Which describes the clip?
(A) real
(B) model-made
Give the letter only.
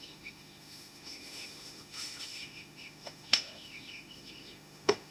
B